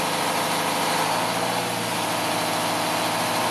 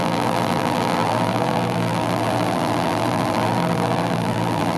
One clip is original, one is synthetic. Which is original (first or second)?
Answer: first